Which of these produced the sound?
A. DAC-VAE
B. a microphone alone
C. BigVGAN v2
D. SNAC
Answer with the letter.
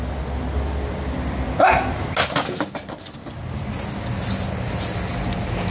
B